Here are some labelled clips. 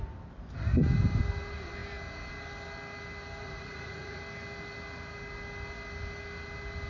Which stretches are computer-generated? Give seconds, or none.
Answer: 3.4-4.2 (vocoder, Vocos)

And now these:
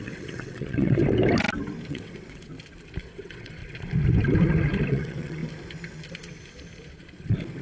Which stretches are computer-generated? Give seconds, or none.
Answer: 0.0-1.0 (vocoder, WaveNeXt); 1.9-2.5; 3.0-3.6; 4.9-5.4

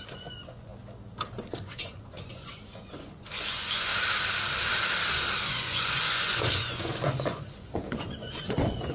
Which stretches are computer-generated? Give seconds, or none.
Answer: 0.0-0.7 (vocoder, Vocos); 1.5-3.9; 5.5-8.9